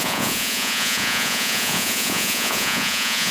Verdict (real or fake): fake